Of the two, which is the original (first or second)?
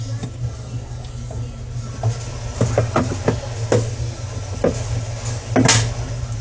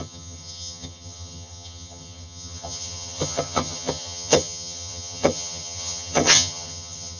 first